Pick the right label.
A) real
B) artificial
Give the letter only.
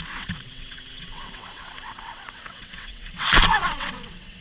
B